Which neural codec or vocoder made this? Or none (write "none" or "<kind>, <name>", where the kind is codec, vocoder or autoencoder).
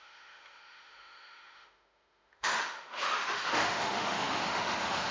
autoencoder, DAC-VAE